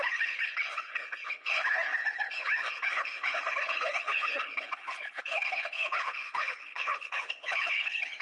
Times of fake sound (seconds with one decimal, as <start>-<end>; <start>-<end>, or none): 0.0-8.2